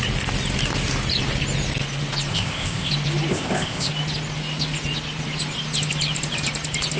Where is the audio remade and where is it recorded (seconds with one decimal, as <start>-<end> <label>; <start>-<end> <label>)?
0.0-2.3 recorded; 2.3-2.9 remade; 2.9-3.3 recorded; 3.3-3.9 remade; 3.9-7.0 recorded

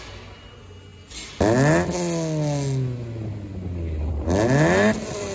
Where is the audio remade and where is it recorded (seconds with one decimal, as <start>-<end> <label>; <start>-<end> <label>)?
0.0-5.3 recorded

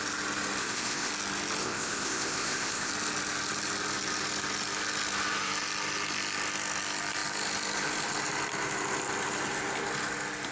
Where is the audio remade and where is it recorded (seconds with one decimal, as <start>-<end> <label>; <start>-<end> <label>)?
0.0-0.6 recorded; 0.6-1.1 remade; 1.1-1.6 recorded; 1.6-2.9 remade; 2.9-10.5 recorded

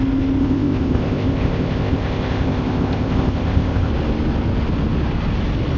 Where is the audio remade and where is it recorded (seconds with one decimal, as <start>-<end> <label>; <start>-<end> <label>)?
0.0-0.4 recorded; 0.4-3.9 remade; 3.9-5.8 recorded

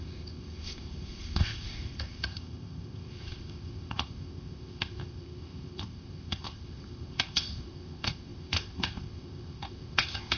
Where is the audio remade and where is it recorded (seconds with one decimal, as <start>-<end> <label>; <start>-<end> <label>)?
0.0-10.4 remade

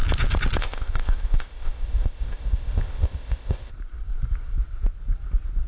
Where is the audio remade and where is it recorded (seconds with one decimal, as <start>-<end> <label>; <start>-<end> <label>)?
0.0-0.6 recorded; 0.6-3.7 remade; 3.7-5.7 recorded

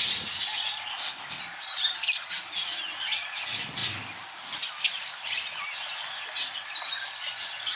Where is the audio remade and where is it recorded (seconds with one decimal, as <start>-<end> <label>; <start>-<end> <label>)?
0.0-0.9 recorded; 0.9-1.4 remade; 1.4-7.8 recorded

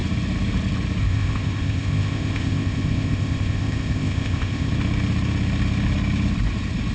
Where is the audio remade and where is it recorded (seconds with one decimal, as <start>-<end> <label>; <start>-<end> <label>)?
0.0-1.0 recorded; 1.0-4.7 remade; 4.7-6.9 recorded